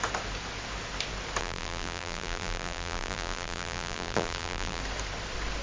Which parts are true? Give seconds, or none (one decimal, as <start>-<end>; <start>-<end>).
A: 0.0-1.4; 4.8-5.6